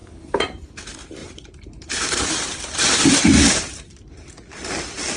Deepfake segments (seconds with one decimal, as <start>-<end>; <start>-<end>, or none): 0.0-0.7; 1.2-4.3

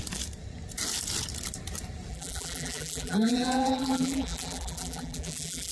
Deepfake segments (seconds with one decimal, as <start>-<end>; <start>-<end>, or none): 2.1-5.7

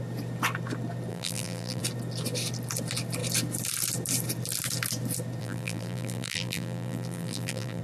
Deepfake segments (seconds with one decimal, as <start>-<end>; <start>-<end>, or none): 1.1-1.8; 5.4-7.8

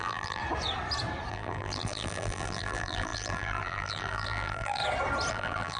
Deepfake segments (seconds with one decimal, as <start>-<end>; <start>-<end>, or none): 0.0-0.4; 1.3-4.8; 5.3-5.8

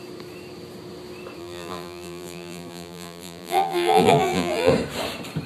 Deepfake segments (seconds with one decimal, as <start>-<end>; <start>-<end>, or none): 1.4-4.7

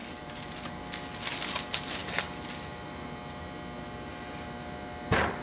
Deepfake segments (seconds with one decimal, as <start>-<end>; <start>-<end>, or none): 0.0-0.8

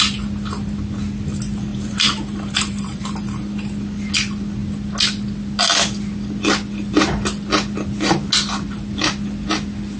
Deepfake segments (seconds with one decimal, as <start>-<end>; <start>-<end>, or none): 1.7-3.0